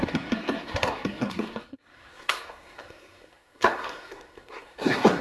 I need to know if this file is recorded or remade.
remade